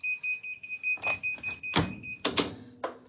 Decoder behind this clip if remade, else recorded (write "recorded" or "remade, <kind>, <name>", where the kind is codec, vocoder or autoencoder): recorded